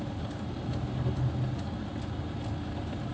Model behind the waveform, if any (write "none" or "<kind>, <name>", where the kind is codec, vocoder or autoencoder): none